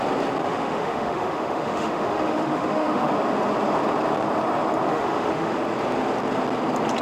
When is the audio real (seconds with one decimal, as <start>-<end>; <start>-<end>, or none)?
0.0-0.4; 3.1-4.9; 5.5-7.0